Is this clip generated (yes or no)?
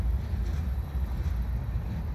no